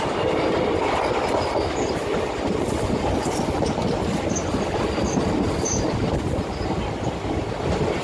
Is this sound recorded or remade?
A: recorded